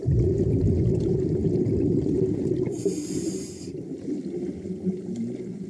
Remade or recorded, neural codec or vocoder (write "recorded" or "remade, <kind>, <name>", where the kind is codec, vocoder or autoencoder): recorded